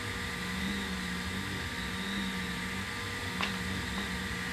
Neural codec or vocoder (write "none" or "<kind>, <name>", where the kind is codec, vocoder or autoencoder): none